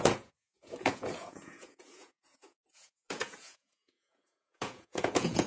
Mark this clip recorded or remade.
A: remade